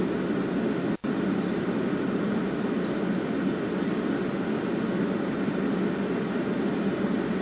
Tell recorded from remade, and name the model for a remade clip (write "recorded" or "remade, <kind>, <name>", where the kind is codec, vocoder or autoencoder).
recorded